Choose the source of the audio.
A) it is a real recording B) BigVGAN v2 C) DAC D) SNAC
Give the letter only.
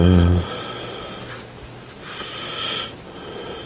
A